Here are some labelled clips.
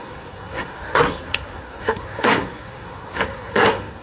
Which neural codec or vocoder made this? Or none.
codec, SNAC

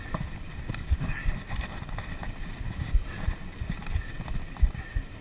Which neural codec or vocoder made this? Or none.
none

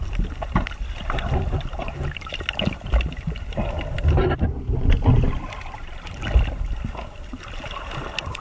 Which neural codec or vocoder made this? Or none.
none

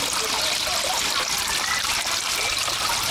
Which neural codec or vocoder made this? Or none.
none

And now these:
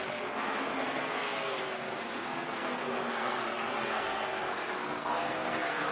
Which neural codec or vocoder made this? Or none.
codec, SNAC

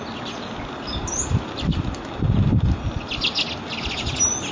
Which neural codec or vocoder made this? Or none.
none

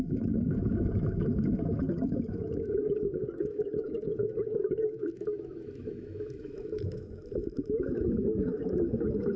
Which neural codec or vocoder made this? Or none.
autoencoder, DAC-VAE